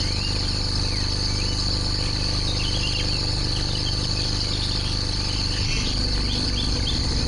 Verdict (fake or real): real